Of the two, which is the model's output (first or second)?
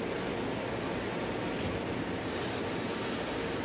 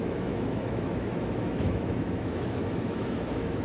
second